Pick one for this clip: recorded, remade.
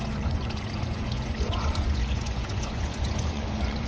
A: remade